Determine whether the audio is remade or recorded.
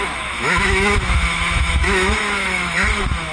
remade